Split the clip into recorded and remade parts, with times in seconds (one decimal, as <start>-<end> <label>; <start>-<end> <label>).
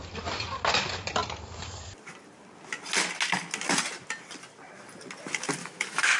0.0-5.6 recorded; 5.6-6.2 remade